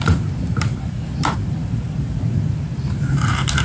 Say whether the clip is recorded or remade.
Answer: remade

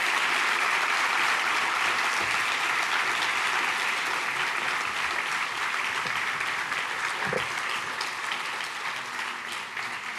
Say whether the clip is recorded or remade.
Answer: recorded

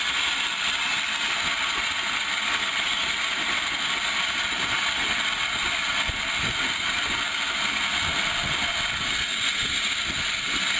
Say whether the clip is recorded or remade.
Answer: recorded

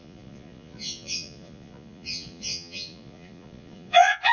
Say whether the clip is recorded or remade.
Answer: remade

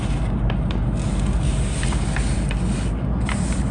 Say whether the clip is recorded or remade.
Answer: recorded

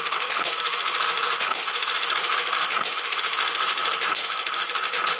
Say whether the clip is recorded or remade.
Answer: remade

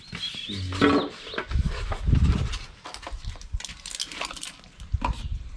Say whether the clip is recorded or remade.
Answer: recorded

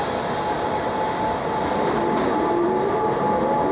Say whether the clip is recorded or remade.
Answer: recorded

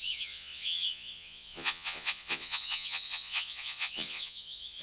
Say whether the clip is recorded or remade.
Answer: remade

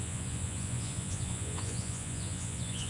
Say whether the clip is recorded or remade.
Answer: remade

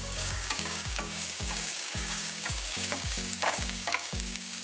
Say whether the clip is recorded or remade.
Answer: remade